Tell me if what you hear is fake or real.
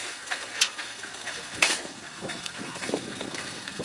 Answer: fake